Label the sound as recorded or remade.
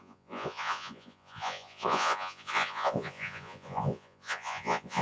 remade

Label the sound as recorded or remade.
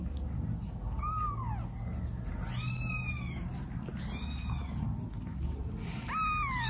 recorded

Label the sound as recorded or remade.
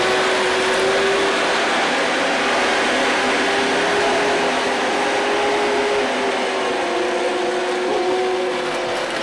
recorded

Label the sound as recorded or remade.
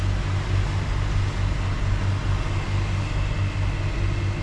recorded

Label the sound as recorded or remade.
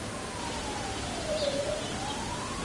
remade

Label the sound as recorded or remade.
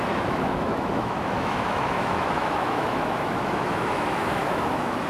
remade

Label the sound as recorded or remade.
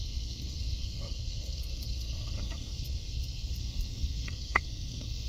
remade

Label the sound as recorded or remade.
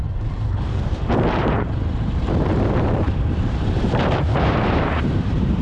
remade